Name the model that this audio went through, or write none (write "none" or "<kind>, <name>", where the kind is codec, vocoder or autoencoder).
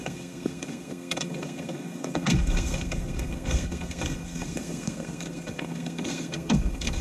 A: codec, SNAC